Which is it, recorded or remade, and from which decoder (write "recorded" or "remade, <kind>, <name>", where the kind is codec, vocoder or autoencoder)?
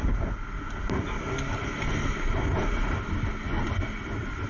recorded